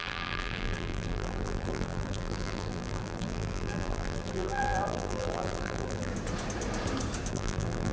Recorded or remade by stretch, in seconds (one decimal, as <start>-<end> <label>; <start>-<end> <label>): 0.0-6.1 remade; 6.1-7.3 recorded; 7.3-7.9 remade